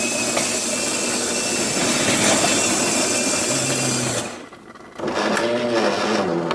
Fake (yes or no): no